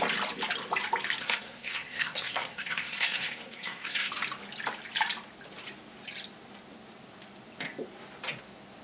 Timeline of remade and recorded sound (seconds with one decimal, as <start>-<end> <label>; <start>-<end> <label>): 0.0-1.2 recorded; 1.2-4.1 remade; 4.1-8.8 recorded